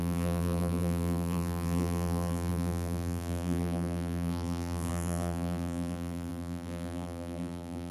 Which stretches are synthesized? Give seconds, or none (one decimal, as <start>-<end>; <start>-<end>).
0.0-7.9